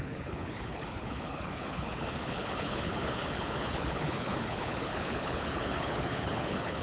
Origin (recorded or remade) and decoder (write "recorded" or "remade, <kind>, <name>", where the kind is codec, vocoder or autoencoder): remade, codec, HILCodec